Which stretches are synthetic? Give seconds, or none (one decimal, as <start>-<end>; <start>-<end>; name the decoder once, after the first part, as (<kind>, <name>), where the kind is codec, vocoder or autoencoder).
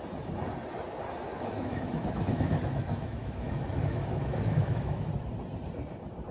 1.3-5.1 (autoencoder, DAC-VAE)